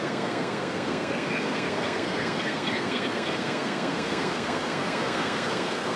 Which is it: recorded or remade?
remade